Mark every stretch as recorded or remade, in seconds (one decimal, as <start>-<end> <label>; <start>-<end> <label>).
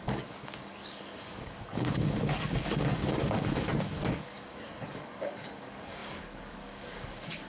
0.0-7.5 remade